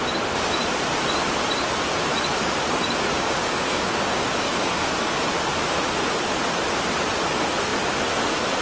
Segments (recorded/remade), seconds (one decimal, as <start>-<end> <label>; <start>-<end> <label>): 0.0-3.1 recorded; 3.1-4.7 remade; 4.7-8.6 recorded